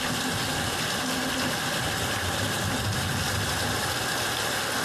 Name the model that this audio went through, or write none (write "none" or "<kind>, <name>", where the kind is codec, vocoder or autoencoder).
none